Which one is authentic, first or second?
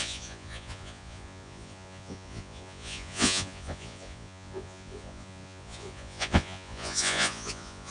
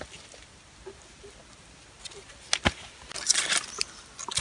second